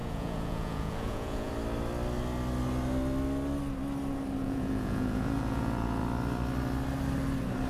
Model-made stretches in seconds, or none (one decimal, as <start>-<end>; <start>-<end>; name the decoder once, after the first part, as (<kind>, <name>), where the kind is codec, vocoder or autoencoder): 0.0-1.5 (vocoder, Vocos); 4.4-6.0